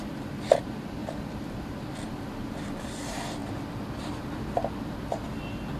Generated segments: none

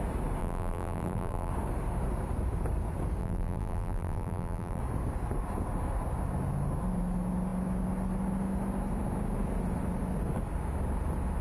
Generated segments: 0.4-1.5 (vocoder, BigVGAN v2); 3.2-4.8

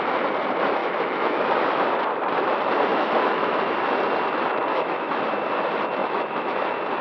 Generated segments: 0.8-1.4 (autoencoder, DAC-VAE); 2.9-3.6; 4.7-5.2; 6.0-6.5